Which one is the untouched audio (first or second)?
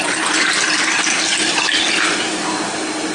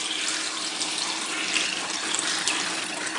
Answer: first